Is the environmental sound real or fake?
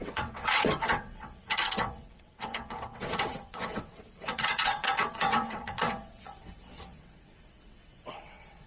fake